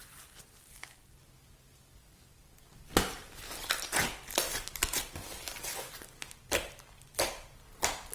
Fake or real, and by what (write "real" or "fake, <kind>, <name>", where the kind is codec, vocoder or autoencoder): real